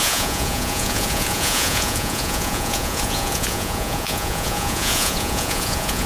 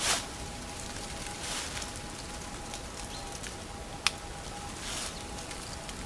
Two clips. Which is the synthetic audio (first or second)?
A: first